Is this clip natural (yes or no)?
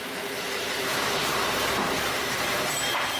no